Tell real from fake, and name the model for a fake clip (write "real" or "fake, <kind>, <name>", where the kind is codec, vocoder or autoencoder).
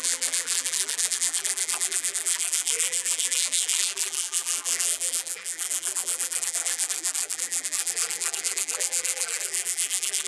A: fake, vocoder, BigVGAN v2